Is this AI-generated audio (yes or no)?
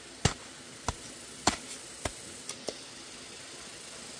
no